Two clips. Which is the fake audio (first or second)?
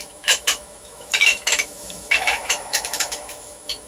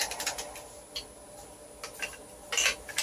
first